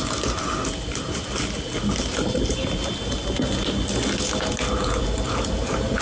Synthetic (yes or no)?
no